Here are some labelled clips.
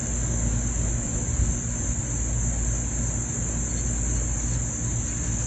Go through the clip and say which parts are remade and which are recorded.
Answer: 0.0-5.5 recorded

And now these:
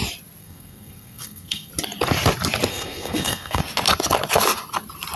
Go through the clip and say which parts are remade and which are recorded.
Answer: 0.0-0.4 recorded; 0.4-1.7 remade; 1.7-2.7 recorded; 2.7-3.6 remade; 3.6-5.2 recorded